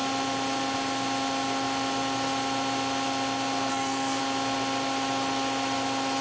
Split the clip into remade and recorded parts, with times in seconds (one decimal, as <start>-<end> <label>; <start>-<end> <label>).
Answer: 0.0-3.7 recorded; 3.7-4.2 remade; 4.2-6.2 recorded